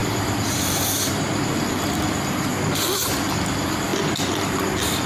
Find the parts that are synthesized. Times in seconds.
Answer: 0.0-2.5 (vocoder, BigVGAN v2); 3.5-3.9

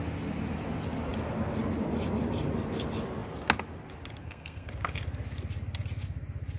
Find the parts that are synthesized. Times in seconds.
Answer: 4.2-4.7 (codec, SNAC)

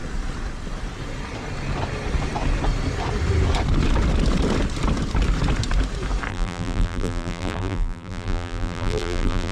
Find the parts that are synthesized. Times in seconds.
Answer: 6.3-9.5 (vocoder, BigVGAN v2)

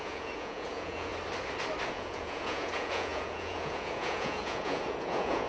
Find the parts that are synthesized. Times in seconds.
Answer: 0.0-1.1 (vocoder, Vocos); 1.9-5.5